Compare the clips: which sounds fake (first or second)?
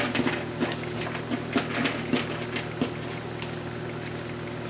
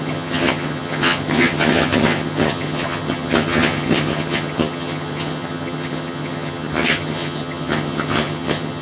second